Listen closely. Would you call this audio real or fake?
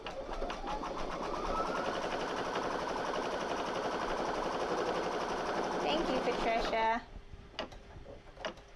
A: real